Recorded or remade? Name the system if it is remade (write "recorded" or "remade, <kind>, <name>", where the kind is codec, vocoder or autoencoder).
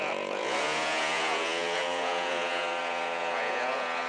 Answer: remade, vocoder, Vocos